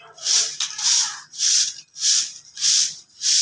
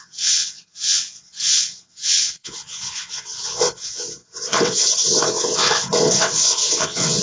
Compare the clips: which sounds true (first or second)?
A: first